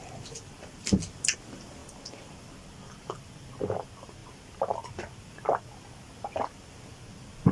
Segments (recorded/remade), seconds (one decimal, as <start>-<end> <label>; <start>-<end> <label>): 0.0-7.5 recorded

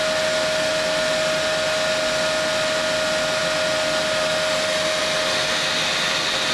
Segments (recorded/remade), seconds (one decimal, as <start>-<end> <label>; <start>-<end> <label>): 0.0-6.5 recorded

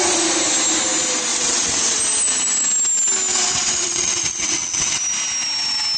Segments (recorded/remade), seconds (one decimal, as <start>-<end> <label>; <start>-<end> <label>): 0.0-1.3 recorded; 1.3-2.0 remade; 2.0-3.3 recorded; 3.3-5.0 remade; 5.0-6.0 recorded

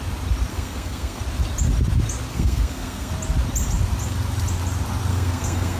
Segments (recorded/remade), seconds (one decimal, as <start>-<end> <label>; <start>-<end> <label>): 0.0-0.5 recorded; 0.5-1.2 remade; 1.2-2.3 recorded; 2.3-3.1 remade; 3.1-5.1 recorded; 5.1-5.8 remade

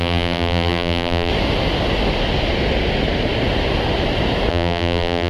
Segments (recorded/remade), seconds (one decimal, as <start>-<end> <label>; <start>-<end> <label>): 0.0-1.3 remade; 1.3-4.5 recorded; 4.5-5.3 remade

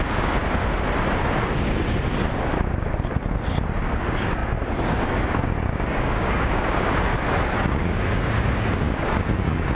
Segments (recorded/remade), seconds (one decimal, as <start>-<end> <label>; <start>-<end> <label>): 0.0-0.4 remade; 0.4-3.8 recorded; 3.8-7.1 remade; 7.1-7.7 recorded; 7.7-9.7 remade

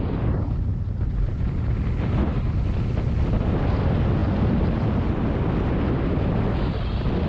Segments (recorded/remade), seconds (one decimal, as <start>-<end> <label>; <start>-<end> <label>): 0.0-7.3 recorded

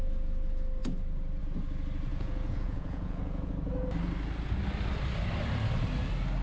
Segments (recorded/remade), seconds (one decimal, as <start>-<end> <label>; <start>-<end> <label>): 0.0-2.1 recorded; 2.1-3.5 remade; 3.5-6.4 recorded